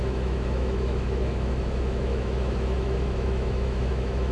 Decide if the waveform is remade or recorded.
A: remade